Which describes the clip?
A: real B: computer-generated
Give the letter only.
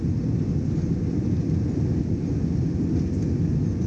A